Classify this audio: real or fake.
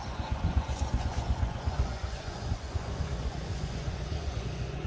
fake